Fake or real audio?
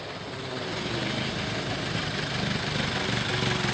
real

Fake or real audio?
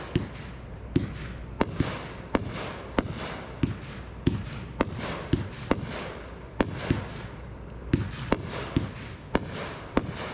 real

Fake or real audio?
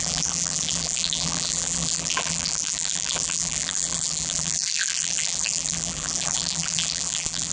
fake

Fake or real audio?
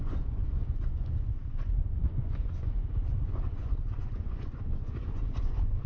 fake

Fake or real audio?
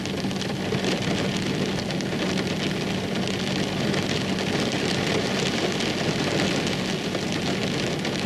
real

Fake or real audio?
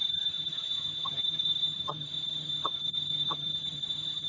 fake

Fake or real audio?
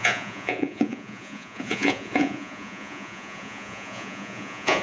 fake